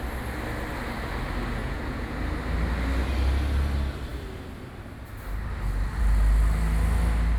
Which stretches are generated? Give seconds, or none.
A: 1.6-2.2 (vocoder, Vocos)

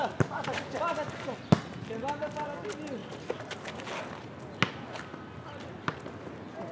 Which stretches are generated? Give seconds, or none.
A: none

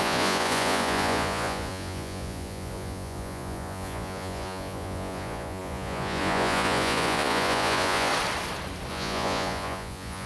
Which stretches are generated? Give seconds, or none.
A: 0.0-8.1 (vocoder, Vocos); 8.9-10.3

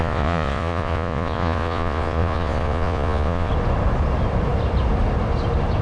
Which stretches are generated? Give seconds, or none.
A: 0.0-3.5 (vocoder, Vocos)

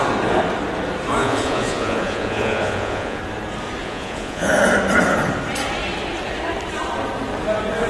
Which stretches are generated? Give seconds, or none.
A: 1.2-3.2 (vocoder, Vocos); 3.8-4.5